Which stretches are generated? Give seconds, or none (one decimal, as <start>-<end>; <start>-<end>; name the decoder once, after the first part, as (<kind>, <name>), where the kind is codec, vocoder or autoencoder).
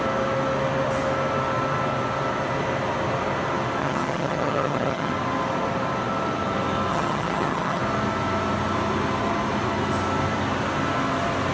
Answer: 3.8-5.1 (vocoder, HiFi-GAN); 6.9-7.8